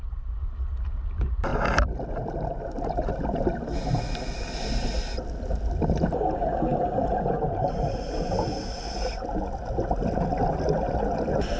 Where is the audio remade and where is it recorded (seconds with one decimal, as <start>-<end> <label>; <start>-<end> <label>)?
0.0-11.6 recorded